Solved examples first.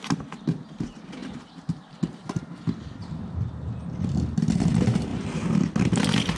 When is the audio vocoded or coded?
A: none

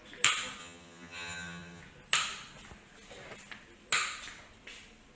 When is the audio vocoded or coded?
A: 0.6-1.8 (vocoder, HiFi-GAN)

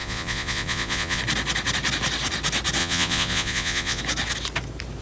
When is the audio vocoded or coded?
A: 0.0-1.2 (vocoder, Vocos); 2.8-4.0